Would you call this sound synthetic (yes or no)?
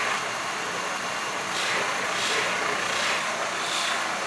no